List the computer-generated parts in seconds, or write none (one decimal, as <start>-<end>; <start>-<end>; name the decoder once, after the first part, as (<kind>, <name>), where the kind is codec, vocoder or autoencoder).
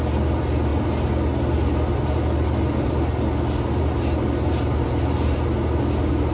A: none